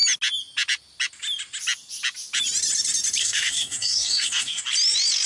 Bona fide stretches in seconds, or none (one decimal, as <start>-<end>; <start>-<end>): 0.0-3.2; 4.6-5.3